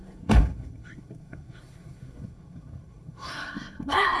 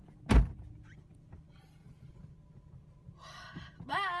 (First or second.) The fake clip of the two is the first